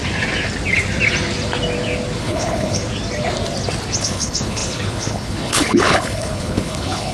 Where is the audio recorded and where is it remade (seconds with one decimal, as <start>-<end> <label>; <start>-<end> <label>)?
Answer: 0.0-2.2 recorded; 2.2-2.8 remade; 2.8-4.0 recorded; 4.0-7.1 remade

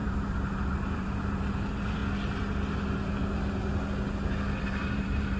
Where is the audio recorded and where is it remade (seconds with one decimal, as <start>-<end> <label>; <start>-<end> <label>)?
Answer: 0.0-2.0 remade; 2.0-4.6 recorded; 4.6-5.4 remade

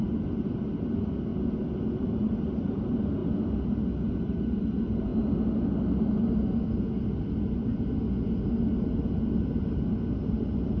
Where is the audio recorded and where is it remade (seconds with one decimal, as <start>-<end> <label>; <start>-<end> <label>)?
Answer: 0.0-1.3 remade; 1.3-2.0 recorded; 2.0-3.2 remade; 3.2-4.1 recorded; 4.1-5.1 remade; 5.1-10.3 recorded; 10.3-10.8 remade

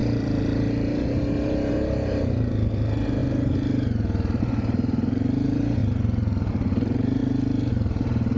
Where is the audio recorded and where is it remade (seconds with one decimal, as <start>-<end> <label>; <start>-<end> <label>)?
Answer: 0.0-3.2 remade; 3.2-4.4 recorded; 4.4-7.2 remade; 7.2-7.7 recorded; 7.7-8.4 remade

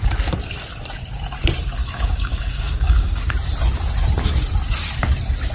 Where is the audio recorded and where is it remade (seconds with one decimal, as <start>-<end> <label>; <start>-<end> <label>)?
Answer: 0.0-1.8 recorded; 1.8-3.2 remade; 3.2-5.5 recorded